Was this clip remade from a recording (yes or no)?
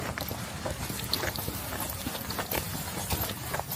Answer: yes